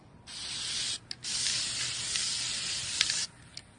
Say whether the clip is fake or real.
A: real